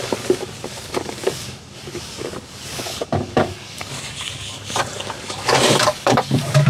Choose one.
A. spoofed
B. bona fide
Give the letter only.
A